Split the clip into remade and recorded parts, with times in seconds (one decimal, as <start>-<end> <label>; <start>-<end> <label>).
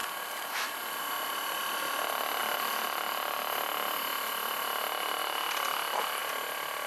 0.0-6.9 recorded